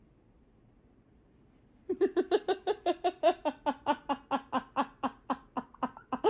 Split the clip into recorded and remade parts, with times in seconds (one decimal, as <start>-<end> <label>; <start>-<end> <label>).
0.0-6.3 recorded